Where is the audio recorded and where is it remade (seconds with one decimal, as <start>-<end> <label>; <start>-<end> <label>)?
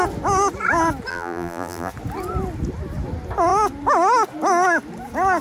0.0-1.1 recorded; 1.1-1.9 remade; 1.9-5.4 recorded